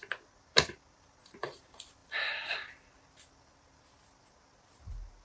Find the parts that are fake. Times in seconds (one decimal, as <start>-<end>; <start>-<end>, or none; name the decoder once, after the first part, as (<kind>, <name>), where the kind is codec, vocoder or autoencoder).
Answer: 0.0-1.6 (vocoder, BigVGAN v2); 2.0-3.0